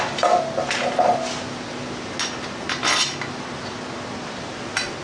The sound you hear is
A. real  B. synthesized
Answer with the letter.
A